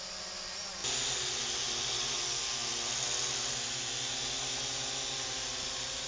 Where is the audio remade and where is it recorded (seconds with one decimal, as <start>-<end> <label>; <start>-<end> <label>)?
0.0-6.1 recorded